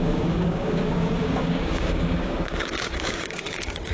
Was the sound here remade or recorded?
remade